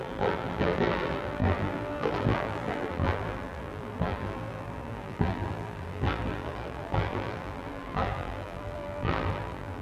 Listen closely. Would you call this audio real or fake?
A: fake